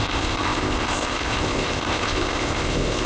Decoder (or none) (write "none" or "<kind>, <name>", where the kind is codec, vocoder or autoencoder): codec, ZipCodec